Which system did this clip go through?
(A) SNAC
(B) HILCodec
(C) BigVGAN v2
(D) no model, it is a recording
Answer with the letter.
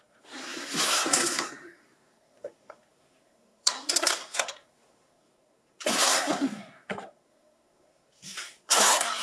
A